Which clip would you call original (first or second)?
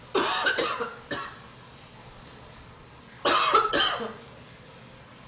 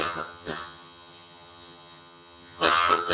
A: first